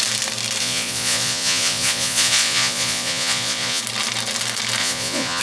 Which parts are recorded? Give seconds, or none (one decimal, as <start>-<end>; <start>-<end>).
0.0-0.6; 3.8-4.8